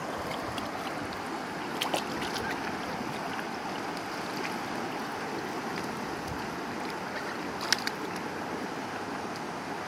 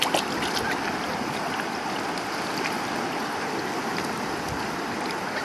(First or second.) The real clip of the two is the first